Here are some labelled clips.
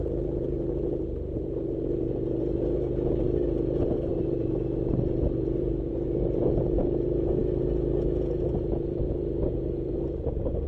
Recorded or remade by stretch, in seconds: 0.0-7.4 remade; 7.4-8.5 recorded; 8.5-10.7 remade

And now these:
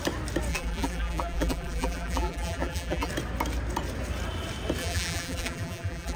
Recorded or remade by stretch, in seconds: 0.0-0.5 recorded; 0.5-3.1 remade; 3.1-4.8 recorded; 4.8-6.2 remade

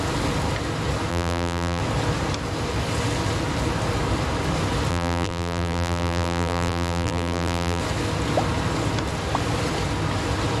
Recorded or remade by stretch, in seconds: 0.0-1.1 recorded; 1.1-1.8 remade; 1.8-4.9 recorded; 4.9-7.8 remade; 7.8-10.6 recorded

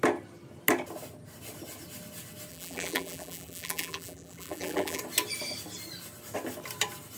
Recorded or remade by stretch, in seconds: 0.0-2.5 recorded; 2.5-5.0 remade; 5.0-7.2 recorded

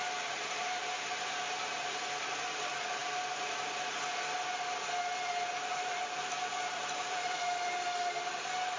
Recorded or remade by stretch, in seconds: 0.0-6.0 recorded; 6.0-7.4 remade; 7.4-8.8 recorded